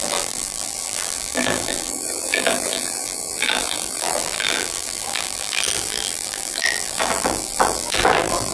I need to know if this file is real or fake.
fake